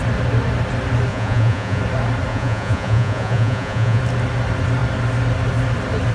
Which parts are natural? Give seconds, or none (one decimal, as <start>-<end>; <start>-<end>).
0.0-1.1; 1.8-2.3; 4.0-6.1